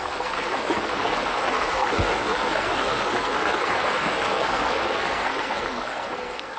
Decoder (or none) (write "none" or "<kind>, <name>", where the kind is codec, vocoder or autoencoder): codec, SNAC